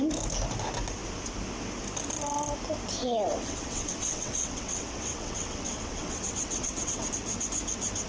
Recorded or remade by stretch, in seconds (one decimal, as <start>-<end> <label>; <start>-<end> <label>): 0.0-3.0 recorded; 3.0-7.1 remade; 7.1-8.1 recorded

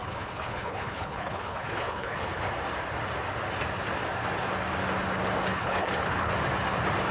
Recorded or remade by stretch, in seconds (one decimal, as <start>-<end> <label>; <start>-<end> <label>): 0.0-2.3 remade; 2.3-5.5 recorded; 5.5-6.3 remade; 6.3-7.1 recorded

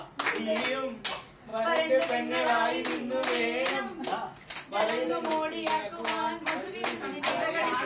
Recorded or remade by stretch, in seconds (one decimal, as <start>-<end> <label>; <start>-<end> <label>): 0.0-7.9 recorded

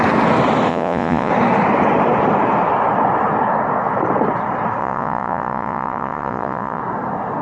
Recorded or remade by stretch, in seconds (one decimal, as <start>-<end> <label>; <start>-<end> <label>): 0.0-0.7 recorded; 0.7-1.3 remade; 1.3-4.8 recorded; 4.8-6.8 remade; 6.8-7.4 recorded

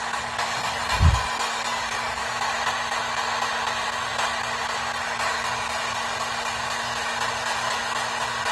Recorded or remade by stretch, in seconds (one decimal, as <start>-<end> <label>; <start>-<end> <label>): 0.0-1.7 recorded; 1.7-2.3 remade; 2.3-8.5 recorded

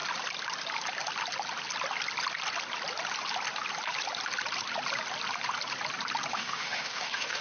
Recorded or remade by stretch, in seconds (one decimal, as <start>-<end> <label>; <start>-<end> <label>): 0.0-6.3 recorded; 6.3-7.4 remade

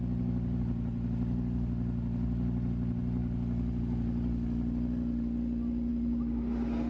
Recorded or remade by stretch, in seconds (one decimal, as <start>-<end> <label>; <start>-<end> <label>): 0.0-6.9 recorded